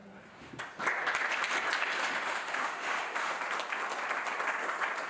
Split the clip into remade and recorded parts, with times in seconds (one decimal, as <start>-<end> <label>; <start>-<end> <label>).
0.0-2.0 recorded; 2.0-3.4 remade; 3.4-5.1 recorded